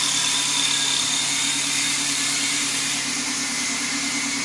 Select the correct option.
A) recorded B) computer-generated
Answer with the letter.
B